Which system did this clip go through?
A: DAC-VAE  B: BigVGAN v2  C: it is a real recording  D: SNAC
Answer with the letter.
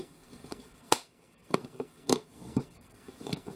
D